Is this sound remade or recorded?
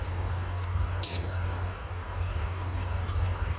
remade